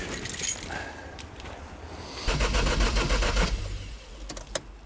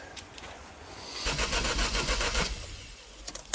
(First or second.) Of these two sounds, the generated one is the second